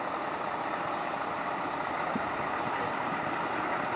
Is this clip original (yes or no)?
yes